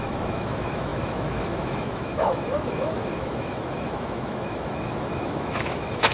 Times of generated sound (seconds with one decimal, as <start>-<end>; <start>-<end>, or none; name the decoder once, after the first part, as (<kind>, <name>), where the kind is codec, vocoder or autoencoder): 0.0-6.1 (autoencoder, DAC-VAE)